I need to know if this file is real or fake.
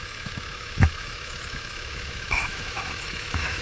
fake